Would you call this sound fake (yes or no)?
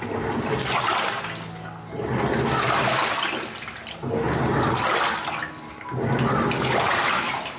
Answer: no